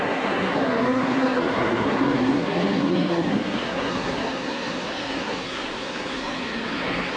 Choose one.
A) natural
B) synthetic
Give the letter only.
B